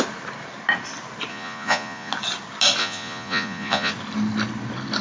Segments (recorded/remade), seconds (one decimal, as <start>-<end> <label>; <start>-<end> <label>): 0.0-1.3 recorded; 1.3-2.1 remade; 2.1-2.8 recorded; 2.8-3.9 remade; 3.9-5.0 recorded